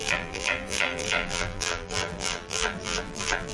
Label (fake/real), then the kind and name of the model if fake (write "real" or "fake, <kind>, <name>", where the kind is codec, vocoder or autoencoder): fake, vocoder, BigVGAN v2